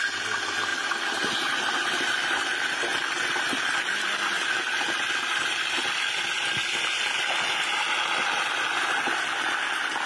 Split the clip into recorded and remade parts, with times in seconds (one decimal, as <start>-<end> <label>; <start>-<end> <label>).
0.0-10.1 recorded